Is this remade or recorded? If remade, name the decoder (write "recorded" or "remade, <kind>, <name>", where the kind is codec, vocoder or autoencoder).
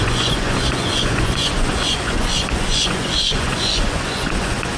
remade, vocoder, Vocos